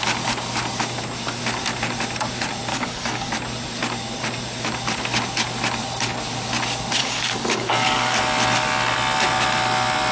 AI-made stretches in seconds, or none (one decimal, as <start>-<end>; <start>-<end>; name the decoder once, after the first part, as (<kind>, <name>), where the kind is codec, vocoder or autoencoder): 2.7-3.3 (codec, DAC); 7.0-8.2